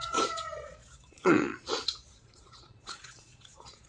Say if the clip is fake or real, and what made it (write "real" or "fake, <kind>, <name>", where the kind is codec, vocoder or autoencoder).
fake, vocoder, Vocos